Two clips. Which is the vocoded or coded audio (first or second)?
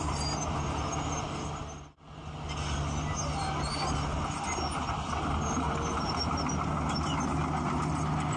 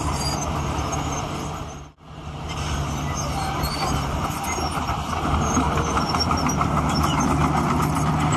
second